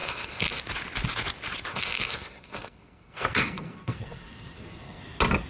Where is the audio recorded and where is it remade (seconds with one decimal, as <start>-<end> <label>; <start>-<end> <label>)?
0.0-0.6 remade; 0.6-1.7 recorded; 1.7-5.0 remade; 5.0-5.5 recorded